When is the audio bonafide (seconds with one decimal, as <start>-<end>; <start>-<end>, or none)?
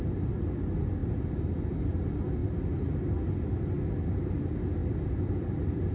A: 0.0-5.9